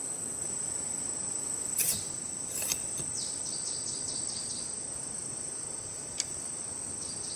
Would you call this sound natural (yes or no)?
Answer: yes